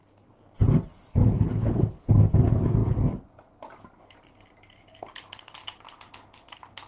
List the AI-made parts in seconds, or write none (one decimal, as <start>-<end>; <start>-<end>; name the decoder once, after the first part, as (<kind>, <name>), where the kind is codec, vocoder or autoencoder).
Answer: 1.2-2.1 (codec, HILCodec)